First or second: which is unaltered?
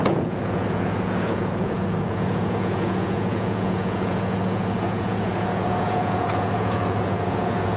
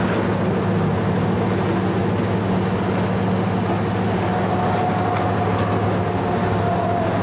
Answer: second